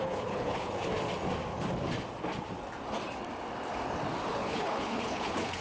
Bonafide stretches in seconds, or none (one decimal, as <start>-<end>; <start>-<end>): 0.9-4.3

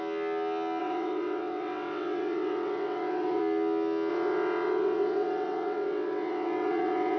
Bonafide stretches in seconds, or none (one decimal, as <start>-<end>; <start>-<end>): 0.0-0.8; 3.4-4.1

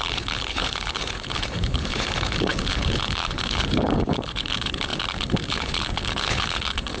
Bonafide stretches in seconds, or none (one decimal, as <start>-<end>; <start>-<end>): none

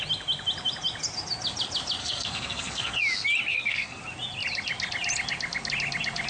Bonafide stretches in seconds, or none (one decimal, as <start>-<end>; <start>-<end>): 0.0-2.0; 3.0-3.5; 4.0-6.3

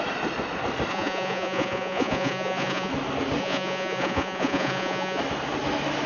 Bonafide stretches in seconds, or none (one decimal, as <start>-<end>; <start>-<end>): 0.0-0.9; 2.9-3.4; 5.2-6.1

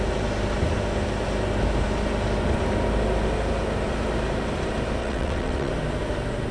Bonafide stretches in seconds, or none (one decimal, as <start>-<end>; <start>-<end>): 0.0-5.0; 5.7-6.5

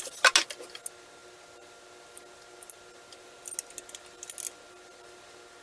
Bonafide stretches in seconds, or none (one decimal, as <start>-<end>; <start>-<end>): 0.0-5.6